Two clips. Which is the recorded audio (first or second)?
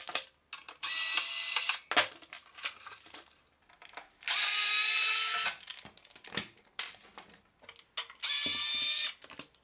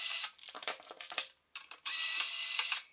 first